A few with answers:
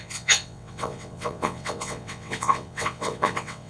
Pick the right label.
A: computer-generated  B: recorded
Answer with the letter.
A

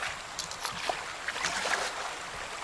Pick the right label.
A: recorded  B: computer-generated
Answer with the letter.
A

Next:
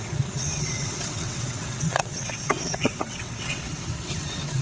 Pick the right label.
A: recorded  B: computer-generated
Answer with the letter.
B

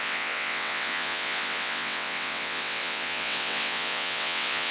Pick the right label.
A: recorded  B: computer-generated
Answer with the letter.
B